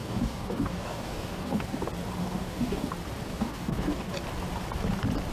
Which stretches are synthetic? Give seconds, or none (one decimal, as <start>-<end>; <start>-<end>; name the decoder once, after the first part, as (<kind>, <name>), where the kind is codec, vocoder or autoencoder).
0.0-1.6 (codec, DAC); 2.2-2.9; 3.3-4.1